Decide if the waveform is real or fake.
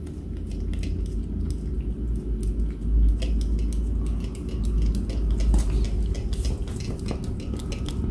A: real